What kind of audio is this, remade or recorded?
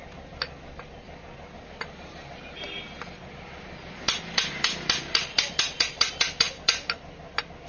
recorded